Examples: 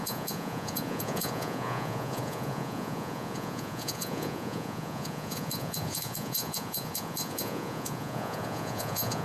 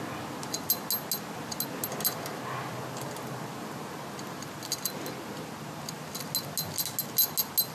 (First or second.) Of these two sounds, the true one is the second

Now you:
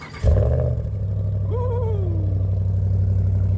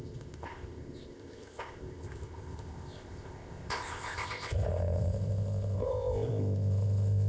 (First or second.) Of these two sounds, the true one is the first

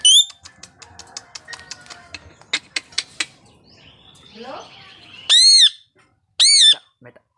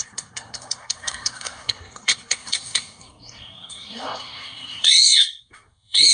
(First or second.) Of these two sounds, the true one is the first